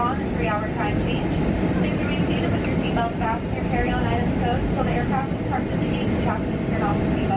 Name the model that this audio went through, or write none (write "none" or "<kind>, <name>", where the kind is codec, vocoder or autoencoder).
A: none